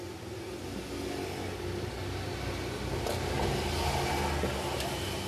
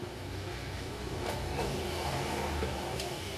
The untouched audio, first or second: first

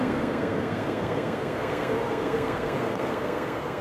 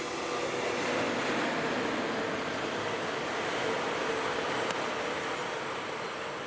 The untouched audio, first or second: second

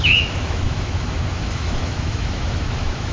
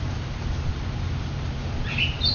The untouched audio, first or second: second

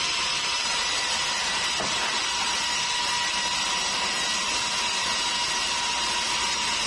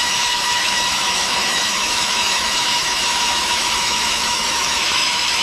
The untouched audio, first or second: first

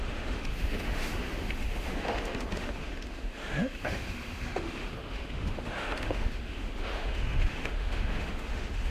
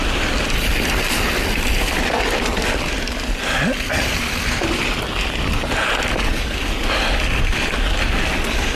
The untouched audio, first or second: second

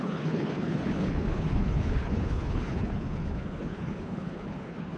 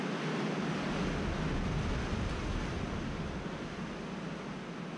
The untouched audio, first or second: second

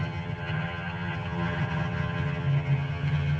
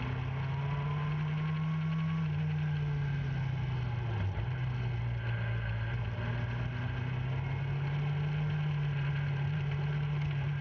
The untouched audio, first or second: second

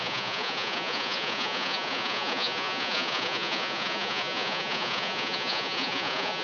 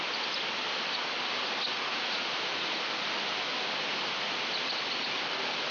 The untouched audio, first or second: second